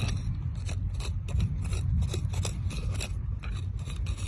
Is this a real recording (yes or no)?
yes